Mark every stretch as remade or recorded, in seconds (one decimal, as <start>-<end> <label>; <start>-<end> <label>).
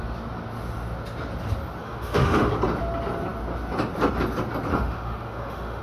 0.0-1.8 recorded; 1.8-2.5 remade; 2.5-4.7 recorded; 4.7-5.8 remade